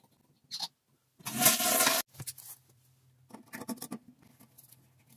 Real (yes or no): yes